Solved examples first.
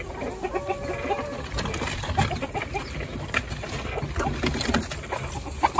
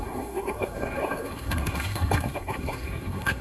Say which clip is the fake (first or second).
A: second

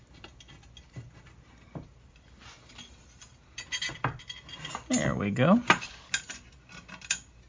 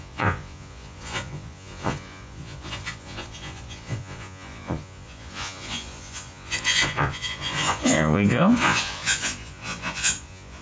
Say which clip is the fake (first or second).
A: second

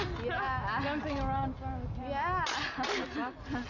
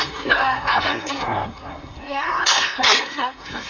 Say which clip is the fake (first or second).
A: second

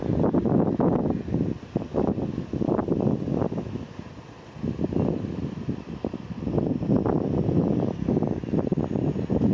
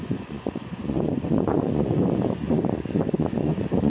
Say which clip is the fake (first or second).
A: second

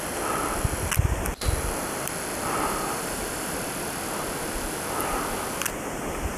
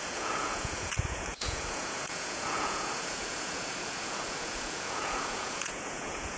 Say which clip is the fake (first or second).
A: second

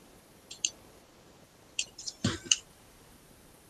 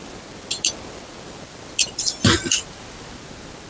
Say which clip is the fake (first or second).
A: first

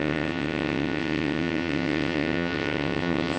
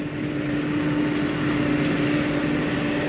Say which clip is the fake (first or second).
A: first